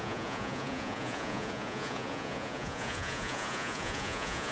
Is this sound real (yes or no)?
no